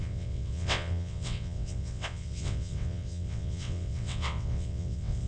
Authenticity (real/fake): fake